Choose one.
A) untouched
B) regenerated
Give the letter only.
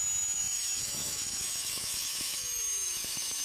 B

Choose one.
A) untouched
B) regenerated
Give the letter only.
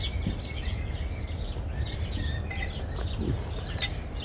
A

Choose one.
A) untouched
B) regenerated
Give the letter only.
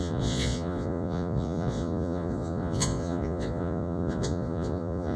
B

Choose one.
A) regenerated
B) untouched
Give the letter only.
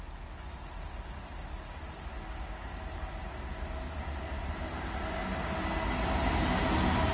B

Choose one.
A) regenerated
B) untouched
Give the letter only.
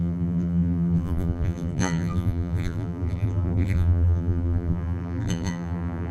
A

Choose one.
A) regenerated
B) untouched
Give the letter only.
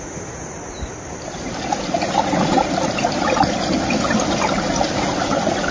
B